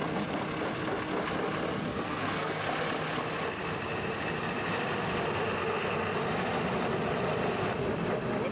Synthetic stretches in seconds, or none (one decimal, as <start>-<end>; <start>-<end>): 1.9-2.6